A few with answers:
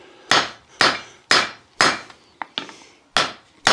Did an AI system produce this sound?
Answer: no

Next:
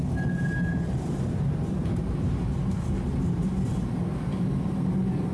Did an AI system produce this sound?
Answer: no